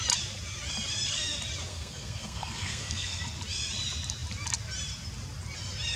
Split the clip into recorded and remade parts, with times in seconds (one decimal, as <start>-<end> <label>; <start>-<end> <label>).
0.0-1.7 recorded; 1.7-3.2 remade; 3.2-6.0 recorded